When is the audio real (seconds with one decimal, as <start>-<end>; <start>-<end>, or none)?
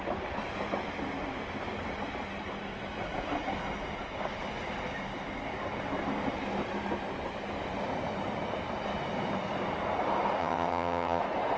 0.0-10.4; 11.2-11.6